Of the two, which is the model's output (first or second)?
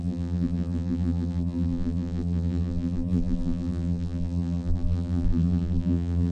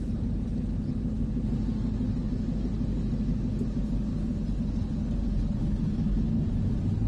first